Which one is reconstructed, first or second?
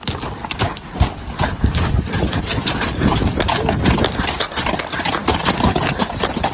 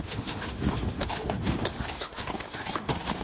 second